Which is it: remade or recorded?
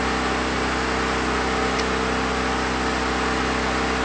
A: recorded